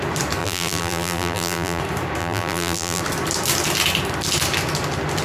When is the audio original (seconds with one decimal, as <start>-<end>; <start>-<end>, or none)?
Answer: 0.0-0.4; 1.8-2.2; 3.0-5.2